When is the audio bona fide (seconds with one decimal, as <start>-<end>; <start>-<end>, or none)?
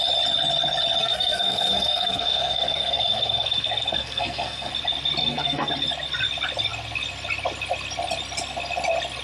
0.0-1.0; 4.7-5.2; 5.7-9.2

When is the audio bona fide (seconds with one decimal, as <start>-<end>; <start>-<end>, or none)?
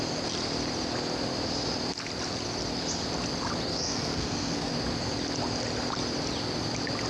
0.0-3.7; 4.7-7.1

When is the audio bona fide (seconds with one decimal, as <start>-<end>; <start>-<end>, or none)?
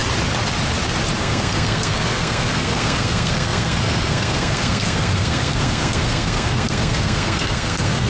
0.0-1.2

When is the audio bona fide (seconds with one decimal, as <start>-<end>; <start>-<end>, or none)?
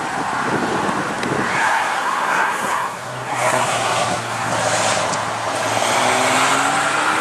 0.0-1.5; 4.5-7.2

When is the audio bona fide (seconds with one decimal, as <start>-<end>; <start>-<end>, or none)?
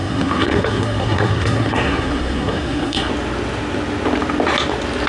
3.1-5.1